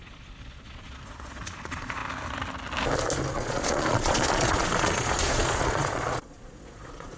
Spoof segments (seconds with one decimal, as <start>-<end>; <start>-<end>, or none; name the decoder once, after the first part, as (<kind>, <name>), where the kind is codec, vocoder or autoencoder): 0.0-2.0 (vocoder, Vocos); 3.3-7.2